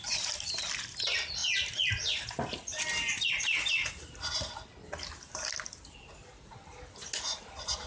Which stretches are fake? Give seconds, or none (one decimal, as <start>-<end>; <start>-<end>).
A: none